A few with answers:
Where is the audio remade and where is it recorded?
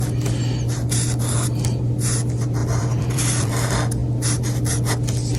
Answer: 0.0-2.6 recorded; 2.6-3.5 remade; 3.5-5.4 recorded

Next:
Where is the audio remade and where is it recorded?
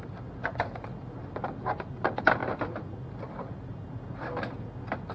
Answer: 0.0-5.1 recorded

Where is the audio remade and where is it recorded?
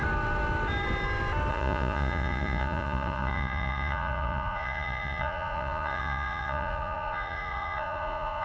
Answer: 0.0-1.5 recorded; 1.5-8.4 remade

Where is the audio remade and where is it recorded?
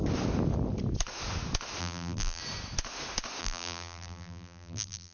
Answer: 0.0-1.8 recorded; 1.8-2.4 remade; 2.4-3.4 recorded; 3.4-5.1 remade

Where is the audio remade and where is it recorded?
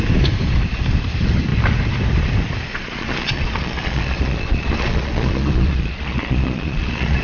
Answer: 0.0-2.7 recorded; 2.7-7.2 remade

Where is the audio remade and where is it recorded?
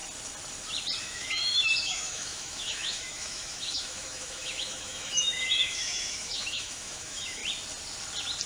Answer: 0.0-1.0 recorded; 1.0-7.4 remade; 7.4-8.5 recorded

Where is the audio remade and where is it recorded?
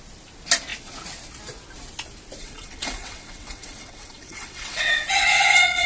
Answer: 0.0-2.4 recorded; 2.4-5.9 remade